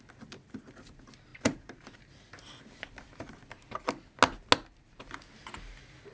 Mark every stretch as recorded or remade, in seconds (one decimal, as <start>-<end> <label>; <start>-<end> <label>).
0.0-6.1 recorded